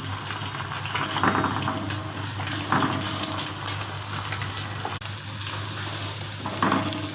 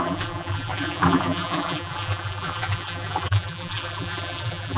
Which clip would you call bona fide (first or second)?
first